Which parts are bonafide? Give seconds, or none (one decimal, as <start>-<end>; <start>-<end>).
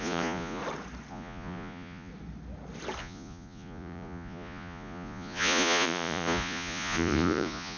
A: 0.6-1.1; 2.1-3.0